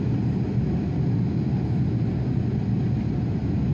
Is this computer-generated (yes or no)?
no